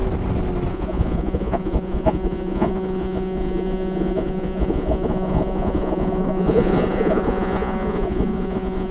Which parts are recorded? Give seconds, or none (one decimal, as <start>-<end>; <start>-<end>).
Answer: 0.0-0.7